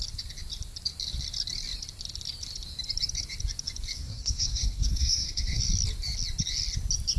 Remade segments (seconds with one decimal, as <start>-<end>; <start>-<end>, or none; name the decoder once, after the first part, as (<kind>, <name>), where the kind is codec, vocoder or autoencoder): 3.9-5.6 (codec, SNAC)